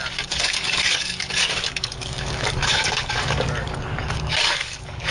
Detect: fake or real fake